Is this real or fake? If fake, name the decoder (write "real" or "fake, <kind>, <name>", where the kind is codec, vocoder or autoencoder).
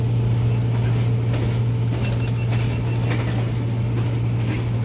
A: real